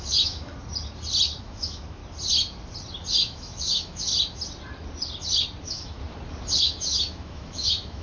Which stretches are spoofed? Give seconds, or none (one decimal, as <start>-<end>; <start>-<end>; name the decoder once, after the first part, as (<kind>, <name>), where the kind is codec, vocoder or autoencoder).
0.0-0.5 (autoencoder, DAC-VAE); 1.4-2.0; 3.1-4.1; 5.6-6.0; 6.6-8.0